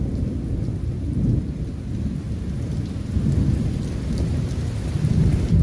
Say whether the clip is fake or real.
real